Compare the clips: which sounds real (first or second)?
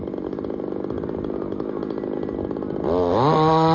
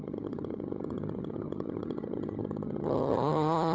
first